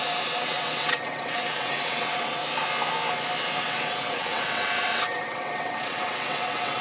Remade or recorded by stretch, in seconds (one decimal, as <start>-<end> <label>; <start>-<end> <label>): 0.0-2.4 remade; 2.4-3.4 recorded; 3.4-6.8 remade